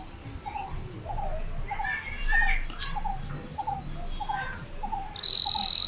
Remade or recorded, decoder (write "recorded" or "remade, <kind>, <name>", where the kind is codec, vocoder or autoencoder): recorded